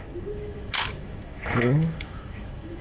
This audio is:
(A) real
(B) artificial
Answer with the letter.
B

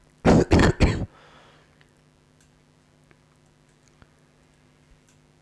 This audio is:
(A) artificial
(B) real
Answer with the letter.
B